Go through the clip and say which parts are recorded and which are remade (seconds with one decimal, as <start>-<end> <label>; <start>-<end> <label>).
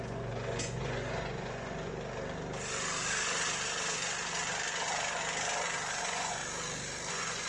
0.0-1.9 remade; 1.9-6.0 recorded; 6.0-6.4 remade; 6.4-7.1 recorded; 7.1-7.5 remade